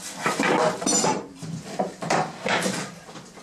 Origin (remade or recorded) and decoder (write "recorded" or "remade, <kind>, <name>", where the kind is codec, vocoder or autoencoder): remade, vocoder, BigVGAN v2